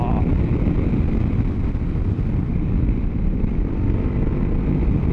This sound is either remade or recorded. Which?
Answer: recorded